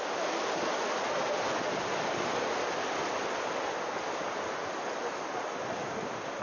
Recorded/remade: recorded